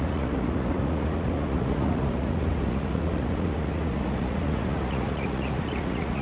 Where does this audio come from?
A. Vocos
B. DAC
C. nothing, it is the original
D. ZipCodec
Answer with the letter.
A